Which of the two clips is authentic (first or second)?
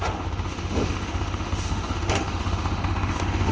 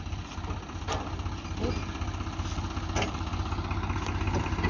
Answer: second